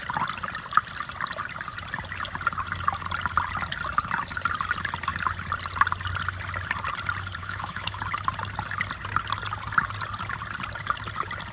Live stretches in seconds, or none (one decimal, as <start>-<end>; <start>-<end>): 0.0-7.4; 8.0-11.5

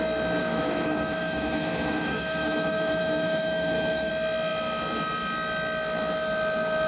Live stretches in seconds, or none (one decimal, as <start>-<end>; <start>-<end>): 0.0-0.4; 4.1-6.9

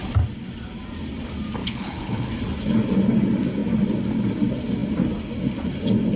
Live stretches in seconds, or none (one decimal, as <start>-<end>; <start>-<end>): 0.0-1.6; 2.3-6.2

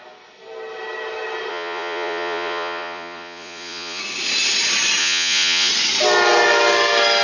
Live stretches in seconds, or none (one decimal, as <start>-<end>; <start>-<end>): 0.0-1.5; 4.0-5.0; 5.7-7.2

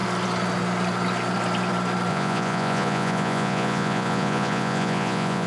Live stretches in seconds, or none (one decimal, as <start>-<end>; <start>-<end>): 0.0-2.1